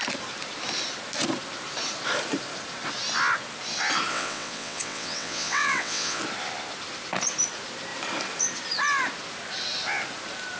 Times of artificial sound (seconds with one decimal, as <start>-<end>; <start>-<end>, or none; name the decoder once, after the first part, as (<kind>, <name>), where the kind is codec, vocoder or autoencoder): 4.1-6.2 (vocoder, WaveNeXt)